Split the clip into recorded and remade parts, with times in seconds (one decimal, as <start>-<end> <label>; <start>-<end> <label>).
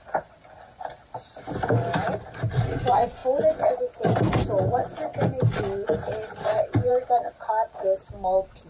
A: 0.0-8.7 recorded